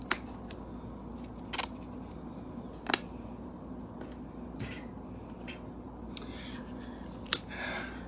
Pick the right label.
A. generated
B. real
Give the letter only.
B